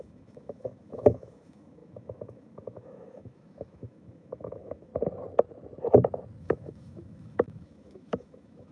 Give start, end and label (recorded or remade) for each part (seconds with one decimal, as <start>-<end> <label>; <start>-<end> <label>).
0.0-4.9 remade; 4.9-6.4 recorded; 6.4-8.7 remade